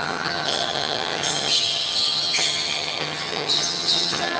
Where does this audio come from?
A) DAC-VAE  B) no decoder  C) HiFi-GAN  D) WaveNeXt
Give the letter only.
C